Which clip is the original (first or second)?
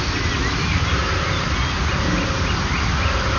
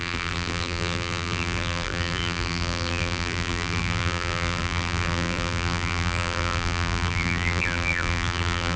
first